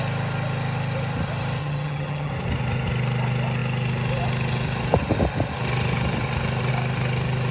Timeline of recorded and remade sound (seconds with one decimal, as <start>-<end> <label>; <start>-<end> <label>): 0.0-1.6 recorded; 1.6-2.3 remade; 2.3-7.5 recorded